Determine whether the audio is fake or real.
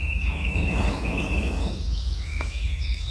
fake